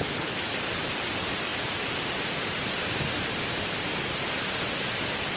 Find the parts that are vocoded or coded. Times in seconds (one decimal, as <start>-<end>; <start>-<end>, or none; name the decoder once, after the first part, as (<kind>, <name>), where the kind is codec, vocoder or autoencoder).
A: 0.5-1.0 (vocoder, BigVGAN v2); 1.5-4.7

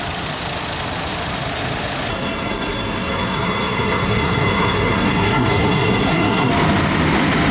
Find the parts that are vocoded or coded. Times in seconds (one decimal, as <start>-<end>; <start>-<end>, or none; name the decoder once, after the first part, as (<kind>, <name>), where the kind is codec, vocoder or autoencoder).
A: 2.1-6.5 (codec, SNAC)